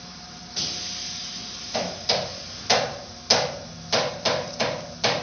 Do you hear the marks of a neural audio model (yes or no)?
no